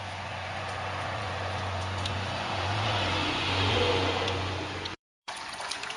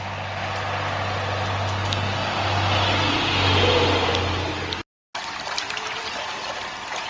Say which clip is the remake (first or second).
first